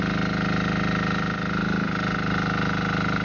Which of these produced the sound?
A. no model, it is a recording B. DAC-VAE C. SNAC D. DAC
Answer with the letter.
A